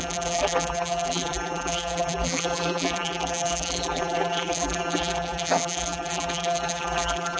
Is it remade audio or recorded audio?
remade